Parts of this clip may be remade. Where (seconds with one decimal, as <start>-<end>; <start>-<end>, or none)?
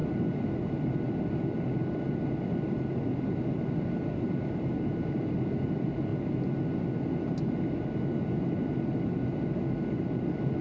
none